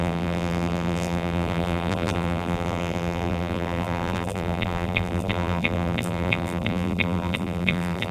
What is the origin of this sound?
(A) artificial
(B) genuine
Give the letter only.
A